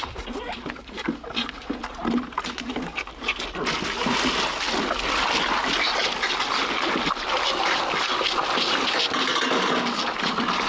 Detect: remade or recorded recorded